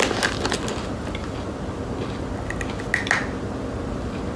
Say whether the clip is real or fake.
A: real